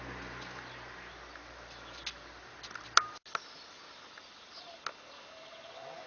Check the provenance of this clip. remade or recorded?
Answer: recorded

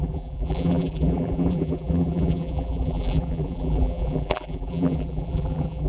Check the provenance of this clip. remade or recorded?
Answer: remade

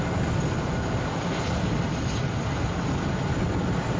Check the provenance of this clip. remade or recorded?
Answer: recorded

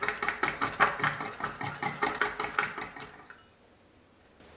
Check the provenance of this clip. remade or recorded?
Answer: recorded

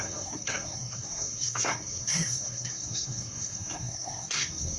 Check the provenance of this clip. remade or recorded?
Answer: remade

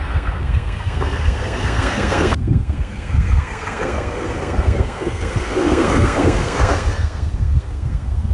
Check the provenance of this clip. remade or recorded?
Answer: remade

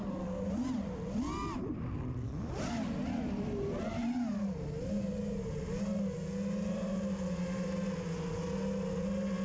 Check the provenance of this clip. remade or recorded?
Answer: recorded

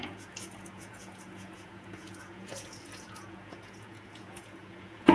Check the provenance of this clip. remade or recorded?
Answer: remade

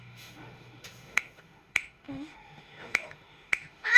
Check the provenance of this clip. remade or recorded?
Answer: remade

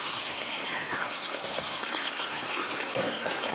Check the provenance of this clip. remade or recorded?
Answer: remade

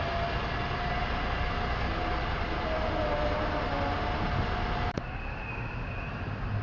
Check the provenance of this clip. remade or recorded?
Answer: recorded